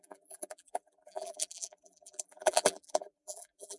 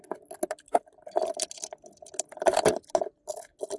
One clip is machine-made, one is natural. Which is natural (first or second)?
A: second